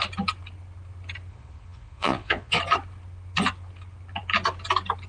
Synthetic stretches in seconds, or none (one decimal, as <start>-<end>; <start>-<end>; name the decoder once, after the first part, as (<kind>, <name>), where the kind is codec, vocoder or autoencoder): 1.3-2.6 (vocoder, Vocos)